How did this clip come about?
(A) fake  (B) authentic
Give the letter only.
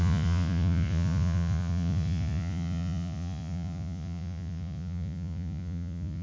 A